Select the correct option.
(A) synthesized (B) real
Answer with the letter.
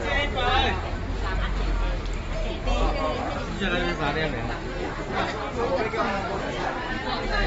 B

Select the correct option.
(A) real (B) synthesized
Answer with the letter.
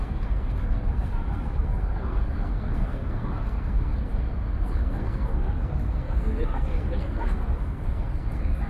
B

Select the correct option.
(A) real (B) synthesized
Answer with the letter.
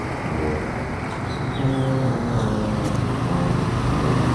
A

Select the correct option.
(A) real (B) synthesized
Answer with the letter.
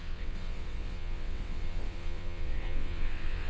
B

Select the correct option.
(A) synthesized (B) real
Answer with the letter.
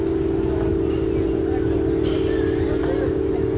B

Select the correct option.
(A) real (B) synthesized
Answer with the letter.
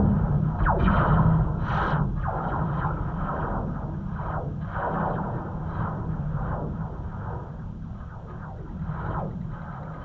A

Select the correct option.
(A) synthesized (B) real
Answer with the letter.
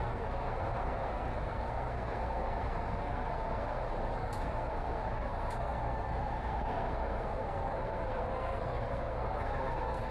A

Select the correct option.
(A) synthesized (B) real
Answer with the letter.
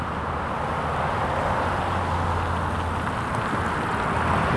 B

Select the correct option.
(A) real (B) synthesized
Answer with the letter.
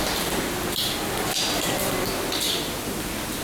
A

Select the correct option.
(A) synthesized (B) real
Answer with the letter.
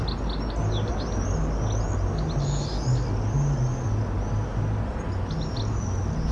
B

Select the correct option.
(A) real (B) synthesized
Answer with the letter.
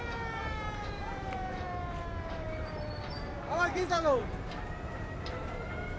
B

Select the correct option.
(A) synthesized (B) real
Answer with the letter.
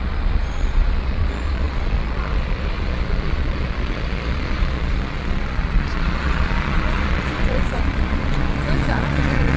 A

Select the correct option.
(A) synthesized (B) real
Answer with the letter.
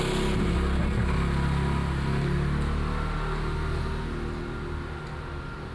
B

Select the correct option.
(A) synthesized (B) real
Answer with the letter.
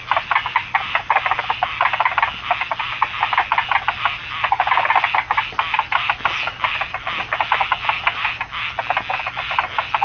B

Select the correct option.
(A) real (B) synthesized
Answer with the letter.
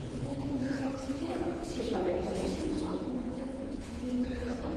B